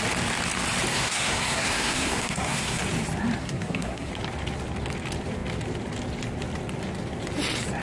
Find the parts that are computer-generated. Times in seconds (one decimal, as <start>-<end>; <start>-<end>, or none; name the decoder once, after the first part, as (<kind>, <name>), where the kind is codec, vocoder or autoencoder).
0.9-2.8 (codec, SNAC); 3.4-4.1